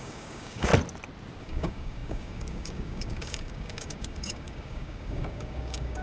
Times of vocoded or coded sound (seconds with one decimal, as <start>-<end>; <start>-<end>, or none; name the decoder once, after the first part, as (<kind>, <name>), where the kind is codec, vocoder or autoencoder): 0.0-0.7 (codec, DAC); 1.4-6.0